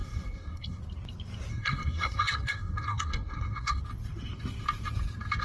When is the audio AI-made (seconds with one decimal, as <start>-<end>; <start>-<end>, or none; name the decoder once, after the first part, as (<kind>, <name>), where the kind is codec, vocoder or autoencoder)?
0.0-0.8 (codec, SNAC); 1.5-3.8